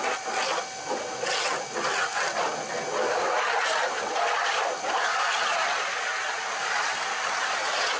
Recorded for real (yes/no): yes